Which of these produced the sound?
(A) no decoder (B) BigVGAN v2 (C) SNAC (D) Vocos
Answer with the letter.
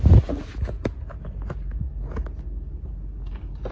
A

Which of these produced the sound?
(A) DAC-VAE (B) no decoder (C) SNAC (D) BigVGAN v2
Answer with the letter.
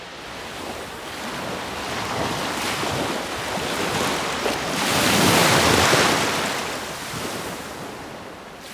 B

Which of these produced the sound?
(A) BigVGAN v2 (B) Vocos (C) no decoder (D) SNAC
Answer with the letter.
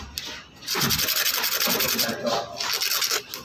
C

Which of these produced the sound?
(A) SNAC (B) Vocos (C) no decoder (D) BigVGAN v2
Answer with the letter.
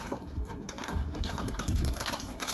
A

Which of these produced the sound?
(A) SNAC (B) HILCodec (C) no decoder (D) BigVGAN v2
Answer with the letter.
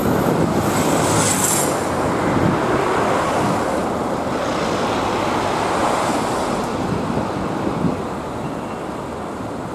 C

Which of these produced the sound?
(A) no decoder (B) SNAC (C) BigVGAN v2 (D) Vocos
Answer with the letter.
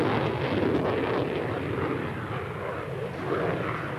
A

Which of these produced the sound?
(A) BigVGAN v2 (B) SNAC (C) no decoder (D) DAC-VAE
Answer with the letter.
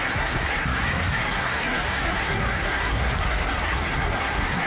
B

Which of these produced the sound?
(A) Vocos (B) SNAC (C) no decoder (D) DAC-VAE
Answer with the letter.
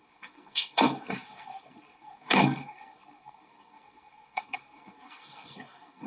B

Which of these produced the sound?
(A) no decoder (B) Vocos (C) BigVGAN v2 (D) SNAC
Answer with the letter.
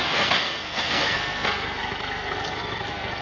D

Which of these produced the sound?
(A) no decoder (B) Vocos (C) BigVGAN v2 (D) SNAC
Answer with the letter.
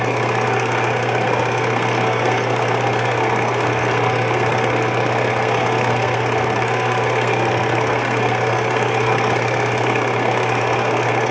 D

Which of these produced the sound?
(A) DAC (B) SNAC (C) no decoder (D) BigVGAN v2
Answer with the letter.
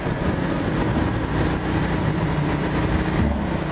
C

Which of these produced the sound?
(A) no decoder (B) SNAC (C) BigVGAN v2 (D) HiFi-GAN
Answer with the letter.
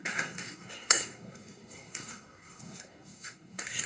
B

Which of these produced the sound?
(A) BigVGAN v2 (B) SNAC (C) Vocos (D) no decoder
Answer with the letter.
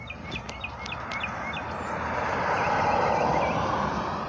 D